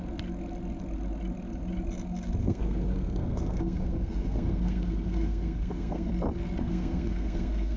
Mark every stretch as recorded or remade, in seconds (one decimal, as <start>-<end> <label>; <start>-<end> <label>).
0.0-2.4 recorded; 2.4-6.1 remade; 6.1-6.6 recorded; 6.6-7.8 remade